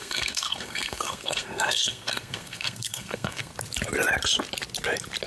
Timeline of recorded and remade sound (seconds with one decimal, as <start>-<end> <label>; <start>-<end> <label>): 0.0-3.5 remade; 3.5-5.3 recorded